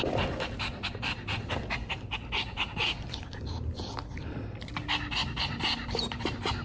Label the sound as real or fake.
real